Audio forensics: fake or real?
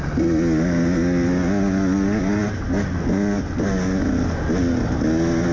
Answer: real